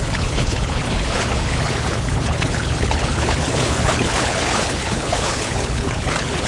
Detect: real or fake fake